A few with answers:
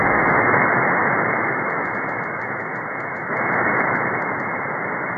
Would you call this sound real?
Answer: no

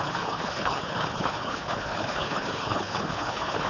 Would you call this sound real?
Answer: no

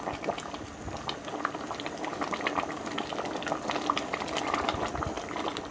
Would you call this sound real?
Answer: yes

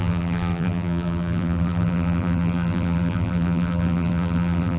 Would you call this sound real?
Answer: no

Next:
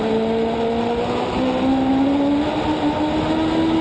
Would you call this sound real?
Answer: yes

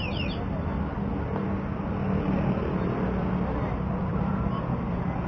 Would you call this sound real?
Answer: yes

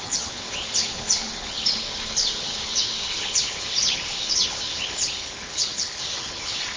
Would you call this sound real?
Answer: no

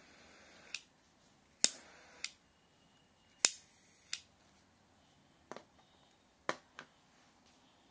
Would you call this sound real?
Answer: yes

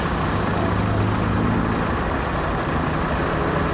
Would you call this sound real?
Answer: yes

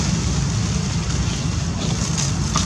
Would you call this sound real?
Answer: yes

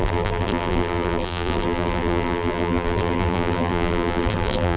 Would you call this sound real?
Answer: no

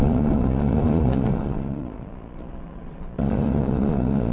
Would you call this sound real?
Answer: no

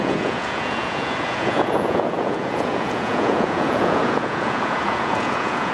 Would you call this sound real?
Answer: no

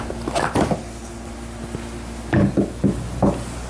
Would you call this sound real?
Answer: yes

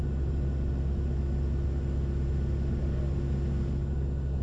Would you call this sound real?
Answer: yes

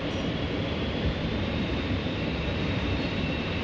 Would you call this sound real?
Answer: no